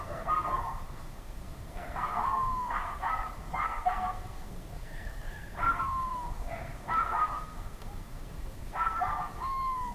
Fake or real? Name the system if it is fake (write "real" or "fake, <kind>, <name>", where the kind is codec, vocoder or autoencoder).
fake, codec, SNAC